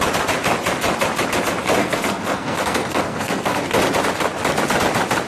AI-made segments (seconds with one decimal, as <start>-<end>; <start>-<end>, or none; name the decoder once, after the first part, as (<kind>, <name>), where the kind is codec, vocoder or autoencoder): 1.8-3.6 (codec, SNAC)